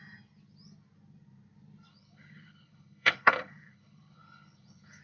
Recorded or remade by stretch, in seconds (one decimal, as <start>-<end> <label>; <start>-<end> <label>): 0.0-1.9 recorded; 1.9-5.0 remade